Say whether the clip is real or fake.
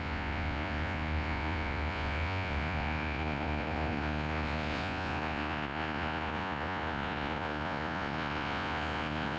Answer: fake